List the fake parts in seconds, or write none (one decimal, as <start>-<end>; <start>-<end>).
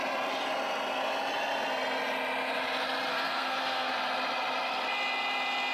3.1-3.9